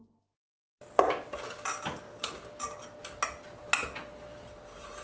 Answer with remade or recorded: recorded